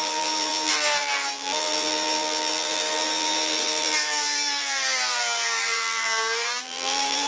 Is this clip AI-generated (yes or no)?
yes